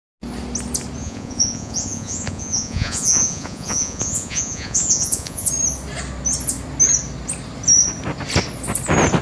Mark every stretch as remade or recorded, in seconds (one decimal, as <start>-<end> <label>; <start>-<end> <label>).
0.0-1.0 recorded; 1.0-5.5 remade; 5.5-9.2 recorded